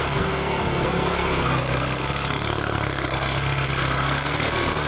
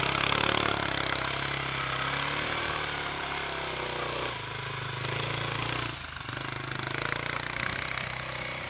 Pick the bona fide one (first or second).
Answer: second